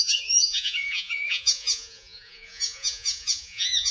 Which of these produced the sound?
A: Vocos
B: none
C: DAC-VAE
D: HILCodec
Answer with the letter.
A